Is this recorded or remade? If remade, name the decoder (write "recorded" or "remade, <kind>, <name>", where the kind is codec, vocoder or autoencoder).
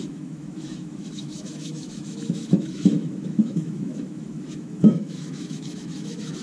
remade, autoencoder, DAC-VAE